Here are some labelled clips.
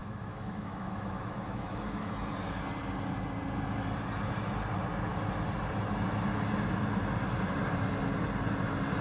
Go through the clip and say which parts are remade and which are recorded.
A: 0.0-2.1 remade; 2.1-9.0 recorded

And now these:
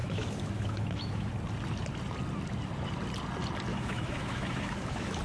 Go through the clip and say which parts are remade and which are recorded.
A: 0.0-1.3 remade; 1.3-3.7 recorded; 3.7-5.2 remade

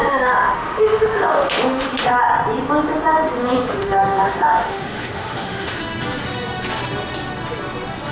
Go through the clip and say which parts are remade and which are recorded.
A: 0.0-2.1 remade; 2.1-3.4 recorded; 3.4-5.8 remade; 5.8-8.1 recorded

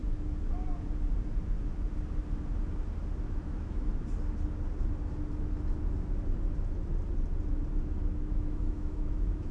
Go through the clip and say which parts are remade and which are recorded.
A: 0.0-3.3 recorded; 3.3-3.9 remade; 3.9-8.1 recorded; 8.1-9.5 remade

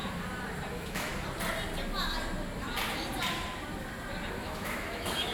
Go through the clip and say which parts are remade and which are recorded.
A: 0.0-0.7 recorded; 0.7-1.1 remade; 1.1-4.3 recorded; 4.3-5.3 remade

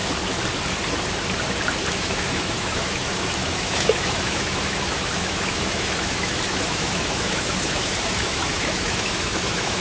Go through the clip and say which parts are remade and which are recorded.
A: 0.0-1.9 recorded; 1.9-9.8 remade